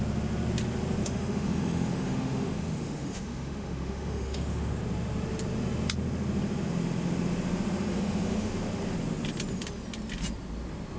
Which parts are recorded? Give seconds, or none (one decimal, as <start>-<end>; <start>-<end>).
0.0-1.0; 4.7-7.9; 8.5-11.0